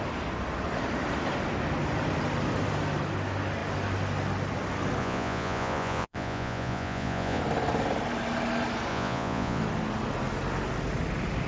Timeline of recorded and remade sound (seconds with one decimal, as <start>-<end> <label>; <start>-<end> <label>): 0.0-5.0 recorded; 5.0-7.4 remade; 7.4-8.9 recorded; 8.9-9.6 remade; 9.6-11.5 recorded